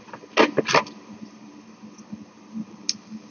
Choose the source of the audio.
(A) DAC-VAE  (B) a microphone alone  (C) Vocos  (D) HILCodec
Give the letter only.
B